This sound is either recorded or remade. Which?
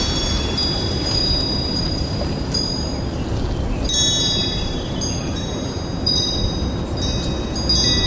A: recorded